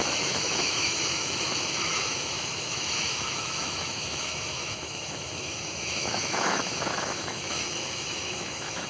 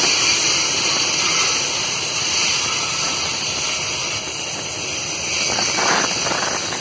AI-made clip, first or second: first